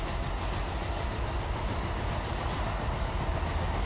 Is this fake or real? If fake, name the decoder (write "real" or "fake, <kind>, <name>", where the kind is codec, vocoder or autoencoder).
real